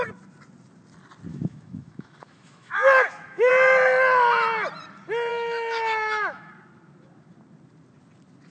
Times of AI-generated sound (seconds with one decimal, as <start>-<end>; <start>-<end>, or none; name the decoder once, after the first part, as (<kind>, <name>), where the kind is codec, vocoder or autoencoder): 1.3-3.5 (autoencoder, DAC-VAE); 5.3-6.5